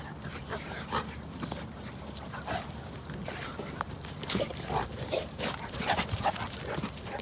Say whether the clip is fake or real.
fake